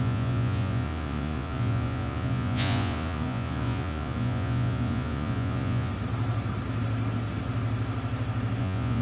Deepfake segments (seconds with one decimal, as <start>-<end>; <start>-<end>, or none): 0.0-5.9; 8.6-9.0